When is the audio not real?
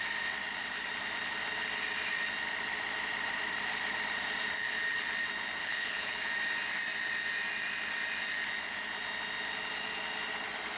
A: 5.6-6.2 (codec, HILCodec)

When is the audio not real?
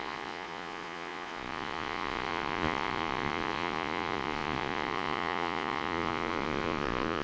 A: 0.0-7.2 (vocoder, Vocos)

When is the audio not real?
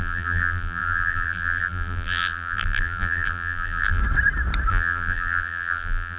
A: 0.0-4.0 (vocoder, BigVGAN v2); 4.7-6.2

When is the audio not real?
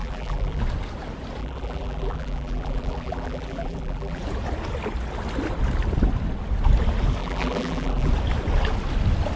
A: 0.0-0.6 (vocoder, BigVGAN v2); 1.4-4.2; 7.2-8.1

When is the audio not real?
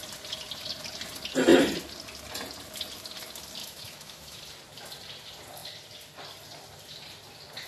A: 3.6-4.4 (autoencoder, DAC-VAE)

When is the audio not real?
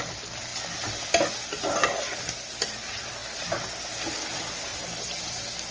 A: none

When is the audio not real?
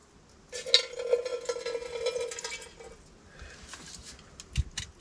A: none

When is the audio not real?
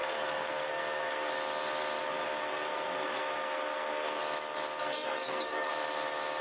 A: 0.0-1.3 (codec, SNAC); 2.0-4.2; 4.8-5.7